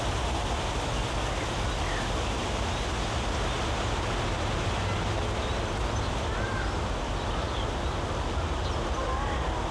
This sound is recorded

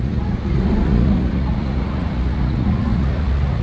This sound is remade